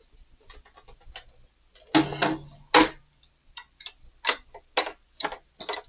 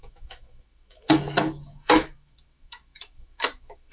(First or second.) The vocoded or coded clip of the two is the second